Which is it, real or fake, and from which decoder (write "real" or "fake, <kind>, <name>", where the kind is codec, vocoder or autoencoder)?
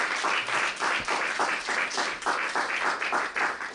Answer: real